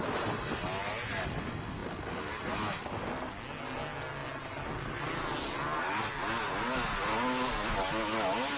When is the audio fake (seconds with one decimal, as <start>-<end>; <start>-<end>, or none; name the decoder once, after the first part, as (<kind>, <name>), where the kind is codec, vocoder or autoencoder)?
none